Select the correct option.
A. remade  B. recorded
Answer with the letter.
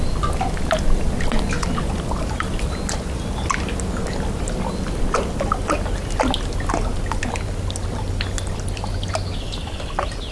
B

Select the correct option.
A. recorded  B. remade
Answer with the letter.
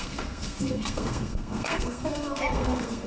B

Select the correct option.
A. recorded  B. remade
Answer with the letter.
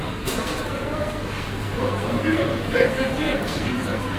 B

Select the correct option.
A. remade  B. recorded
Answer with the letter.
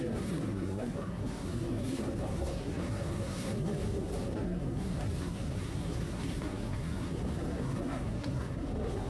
A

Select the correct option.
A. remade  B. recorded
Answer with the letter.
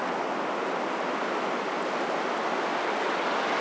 B